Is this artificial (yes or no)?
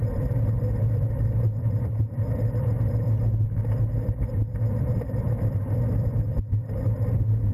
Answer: yes